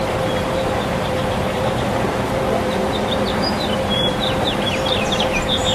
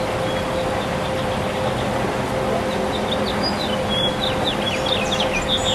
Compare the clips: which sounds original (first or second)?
second